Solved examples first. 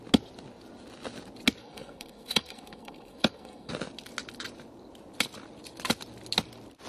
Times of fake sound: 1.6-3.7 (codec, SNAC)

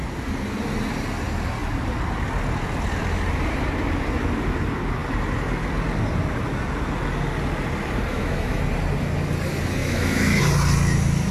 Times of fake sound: 8.1-8.6 (autoencoder, DAC-VAE); 9.8-10.4

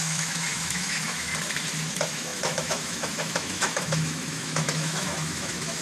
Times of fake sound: 0.0-1.3 (autoencoder, DAC-VAE); 1.9-5.8

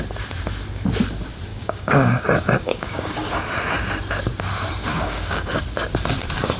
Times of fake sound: 1.5-3.4 (codec, DAC); 4.9-5.6

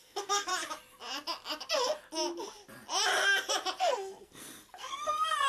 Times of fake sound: 0.0-0.5 (codec, SNAC); 3.8-5.5

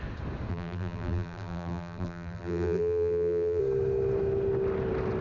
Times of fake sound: 0.5-3.6 (vocoder, BigVGAN v2)